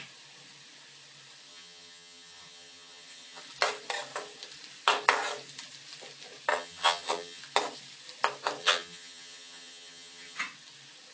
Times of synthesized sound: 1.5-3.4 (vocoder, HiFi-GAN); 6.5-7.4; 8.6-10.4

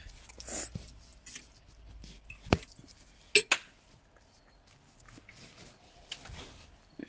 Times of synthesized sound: none

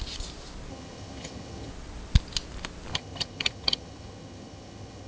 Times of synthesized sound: 0.7-1.7 (vocoder, HiFi-GAN); 2.9-5.1

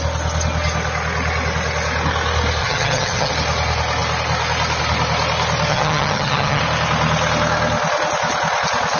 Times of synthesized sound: 2.6-3.3 (vocoder, HiFi-GAN); 5.7-6.6

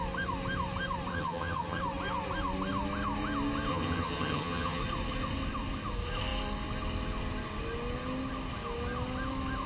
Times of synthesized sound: 1.1-1.8 (vocoder, HiFi-GAN); 3.7-4.8

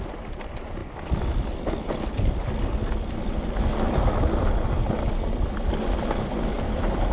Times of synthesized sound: none

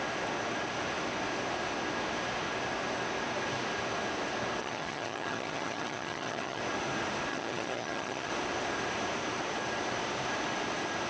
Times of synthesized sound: 4.6-6.6 (vocoder, HiFi-GAN); 7.3-8.3